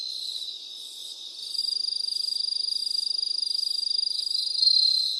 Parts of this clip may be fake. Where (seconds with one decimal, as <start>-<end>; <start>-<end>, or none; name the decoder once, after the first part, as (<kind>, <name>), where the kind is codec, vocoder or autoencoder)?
1.0-1.6 (vocoder, BigVGAN v2); 2.8-5.2